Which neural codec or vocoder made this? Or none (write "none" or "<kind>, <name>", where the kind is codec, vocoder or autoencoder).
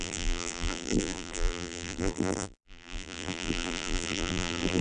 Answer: vocoder, BigVGAN v2